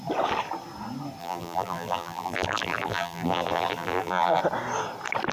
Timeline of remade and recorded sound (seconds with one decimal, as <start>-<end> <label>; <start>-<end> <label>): 0.0-1.2 recorded; 1.2-4.4 remade; 4.4-5.3 recorded